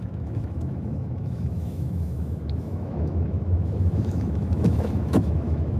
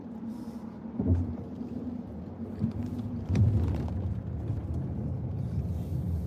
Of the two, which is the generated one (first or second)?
first